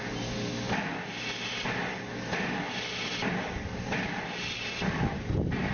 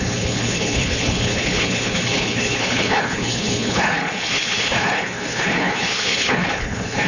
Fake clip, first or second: second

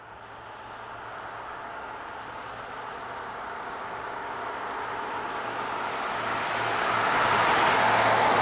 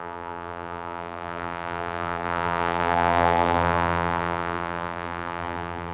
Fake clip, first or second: second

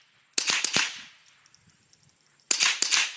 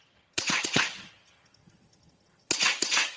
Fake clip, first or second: second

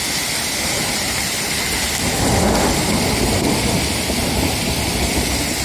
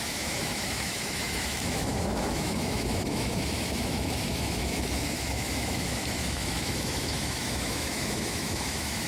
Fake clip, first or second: second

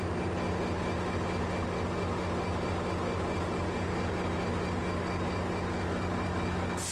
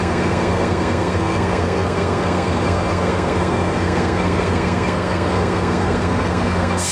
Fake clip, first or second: second